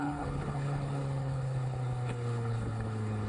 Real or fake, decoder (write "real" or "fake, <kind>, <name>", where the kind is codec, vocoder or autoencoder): fake, codec, HILCodec